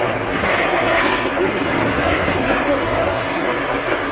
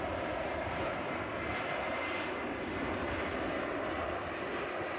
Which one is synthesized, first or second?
first